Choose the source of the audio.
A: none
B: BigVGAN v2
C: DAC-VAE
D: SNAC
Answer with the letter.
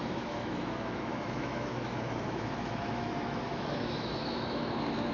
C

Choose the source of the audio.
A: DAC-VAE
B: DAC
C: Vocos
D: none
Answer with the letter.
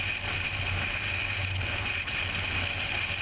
D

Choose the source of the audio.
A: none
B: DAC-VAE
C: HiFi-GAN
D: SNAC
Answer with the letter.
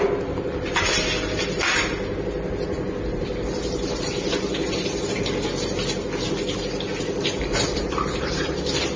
A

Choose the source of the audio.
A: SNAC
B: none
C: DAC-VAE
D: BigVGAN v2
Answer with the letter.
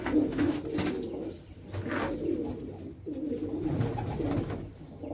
B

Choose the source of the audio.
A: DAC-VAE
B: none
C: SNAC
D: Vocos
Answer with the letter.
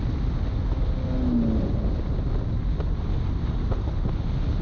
B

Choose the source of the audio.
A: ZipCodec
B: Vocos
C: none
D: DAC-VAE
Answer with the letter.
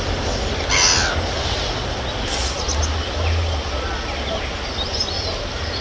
C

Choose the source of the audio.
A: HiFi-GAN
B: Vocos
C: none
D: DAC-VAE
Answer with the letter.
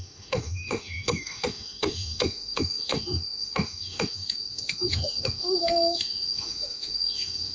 D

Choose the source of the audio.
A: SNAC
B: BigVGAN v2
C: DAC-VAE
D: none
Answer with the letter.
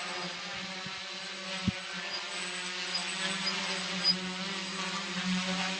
D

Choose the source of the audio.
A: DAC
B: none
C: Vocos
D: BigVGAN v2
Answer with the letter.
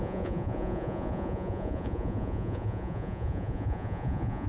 C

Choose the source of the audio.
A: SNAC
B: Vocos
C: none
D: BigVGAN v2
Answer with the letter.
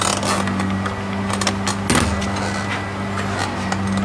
C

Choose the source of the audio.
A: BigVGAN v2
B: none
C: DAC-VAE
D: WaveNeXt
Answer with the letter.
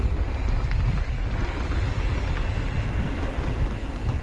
B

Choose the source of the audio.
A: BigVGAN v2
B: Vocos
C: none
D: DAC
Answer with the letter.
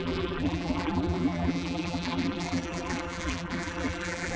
A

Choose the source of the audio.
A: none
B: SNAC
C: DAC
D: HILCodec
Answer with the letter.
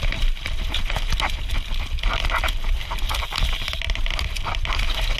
A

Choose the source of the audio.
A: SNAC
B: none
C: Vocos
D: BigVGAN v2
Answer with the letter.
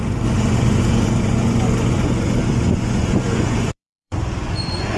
C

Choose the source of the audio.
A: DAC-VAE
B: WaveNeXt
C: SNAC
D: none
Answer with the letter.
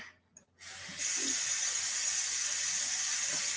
D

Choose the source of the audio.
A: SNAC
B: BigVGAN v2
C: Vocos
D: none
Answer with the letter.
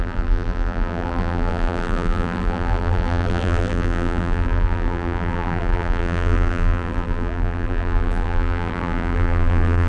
B